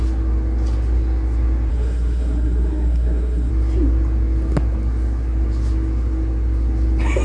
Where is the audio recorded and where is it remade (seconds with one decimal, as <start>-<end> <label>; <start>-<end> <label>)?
0.0-1.7 recorded; 1.7-3.5 remade; 3.5-7.2 recorded